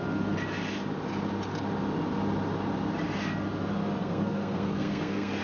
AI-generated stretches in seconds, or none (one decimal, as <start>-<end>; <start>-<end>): 4.0-5.4

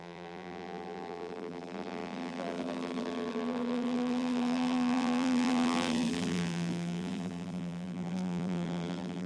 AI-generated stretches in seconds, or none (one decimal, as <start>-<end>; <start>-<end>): 0.0-9.3

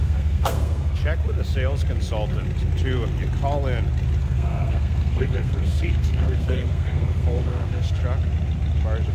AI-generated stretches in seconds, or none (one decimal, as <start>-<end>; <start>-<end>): 0.0-1.0; 4.2-8.0

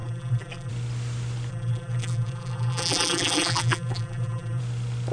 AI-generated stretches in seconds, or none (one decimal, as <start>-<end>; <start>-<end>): 0.0-0.7; 1.5-4.6